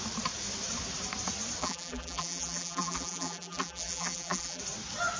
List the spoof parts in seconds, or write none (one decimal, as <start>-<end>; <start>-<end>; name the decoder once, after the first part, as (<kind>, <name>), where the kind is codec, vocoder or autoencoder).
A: 1.6-4.6 (vocoder, BigVGAN v2)